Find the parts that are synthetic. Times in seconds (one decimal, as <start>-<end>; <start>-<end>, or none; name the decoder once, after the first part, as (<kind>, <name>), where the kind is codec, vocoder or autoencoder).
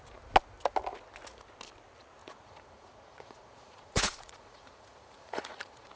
2.2-6.0 (vocoder, Vocos)